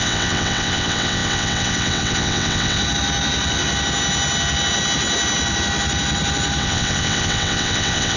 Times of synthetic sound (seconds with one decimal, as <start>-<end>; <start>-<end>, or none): 0.0-2.8; 6.6-8.2